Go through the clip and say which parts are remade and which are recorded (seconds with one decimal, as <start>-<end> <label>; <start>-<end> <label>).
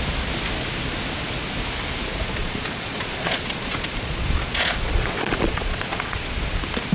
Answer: 0.0-2.4 recorded; 2.4-6.5 remade; 6.5-6.9 recorded